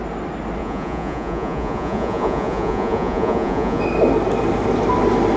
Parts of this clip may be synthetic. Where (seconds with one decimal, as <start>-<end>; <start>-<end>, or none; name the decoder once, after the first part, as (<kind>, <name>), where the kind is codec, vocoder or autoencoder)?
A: 0.6-3.8 (vocoder, Vocos)

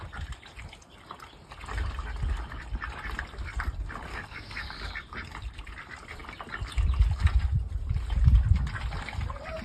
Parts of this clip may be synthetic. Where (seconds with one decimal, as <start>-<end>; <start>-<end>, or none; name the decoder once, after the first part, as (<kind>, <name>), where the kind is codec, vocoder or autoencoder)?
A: 4.1-4.9 (codec, DAC)

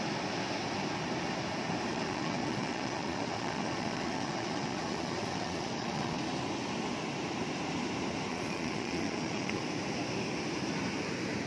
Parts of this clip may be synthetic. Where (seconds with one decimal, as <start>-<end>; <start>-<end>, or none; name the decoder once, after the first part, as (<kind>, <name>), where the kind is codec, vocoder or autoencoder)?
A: 1.9-6.2 (vocoder, Vocos); 8.3-9.6

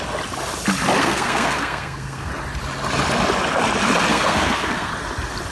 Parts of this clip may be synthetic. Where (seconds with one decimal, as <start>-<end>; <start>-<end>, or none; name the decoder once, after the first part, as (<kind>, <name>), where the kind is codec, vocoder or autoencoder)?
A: 1.0-2.3 (codec, SNAC); 4.1-4.9

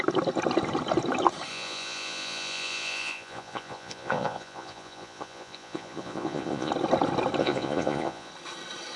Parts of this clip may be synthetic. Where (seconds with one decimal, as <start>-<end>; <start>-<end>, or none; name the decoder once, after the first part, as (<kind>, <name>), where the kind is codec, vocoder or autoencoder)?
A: 1.5-6.7 (vocoder, Vocos); 7.4-8.3